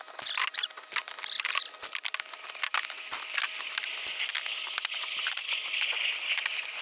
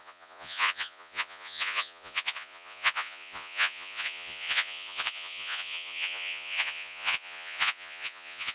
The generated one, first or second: second